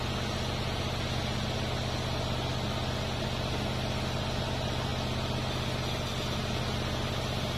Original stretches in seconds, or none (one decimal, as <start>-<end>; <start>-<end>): 0.0-7.6